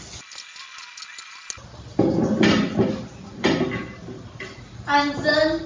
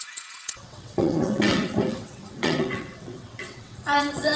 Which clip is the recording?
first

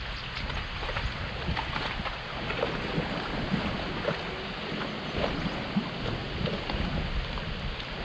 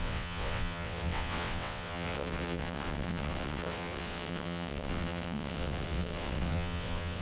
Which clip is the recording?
first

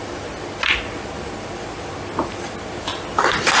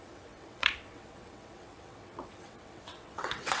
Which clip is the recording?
first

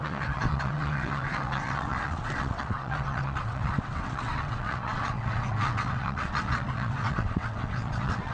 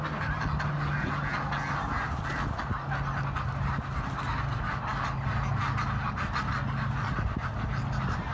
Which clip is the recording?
second